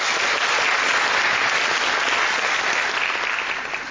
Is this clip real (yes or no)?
yes